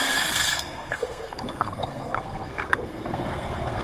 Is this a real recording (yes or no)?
no